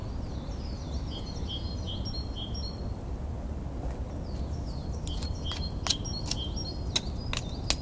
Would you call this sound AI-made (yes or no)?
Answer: no